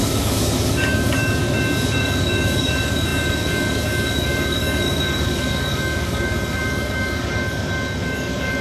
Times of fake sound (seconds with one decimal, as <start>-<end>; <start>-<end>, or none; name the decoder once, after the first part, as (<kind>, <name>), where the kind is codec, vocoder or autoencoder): 0.0-1.4 (codec, DAC); 2.0-8.6